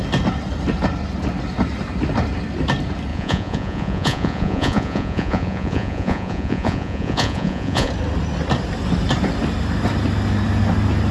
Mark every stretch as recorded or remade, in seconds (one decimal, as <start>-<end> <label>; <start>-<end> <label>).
0.0-3.1 recorded; 3.1-7.9 remade; 7.9-11.1 recorded